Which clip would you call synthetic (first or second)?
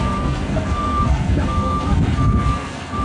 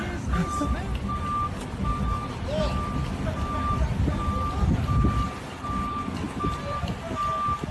first